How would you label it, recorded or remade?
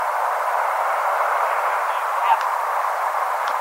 recorded